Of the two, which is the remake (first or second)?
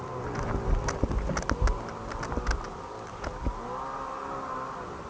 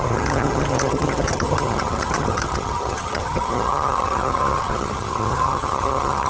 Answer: second